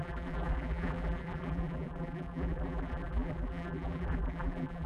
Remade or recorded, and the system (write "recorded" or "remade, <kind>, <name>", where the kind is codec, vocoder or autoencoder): remade, vocoder, BigVGAN v2